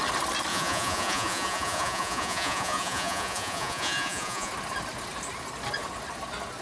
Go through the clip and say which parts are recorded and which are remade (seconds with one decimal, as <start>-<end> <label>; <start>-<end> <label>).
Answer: 0.0-0.5 recorded; 0.5-4.5 remade; 4.5-6.6 recorded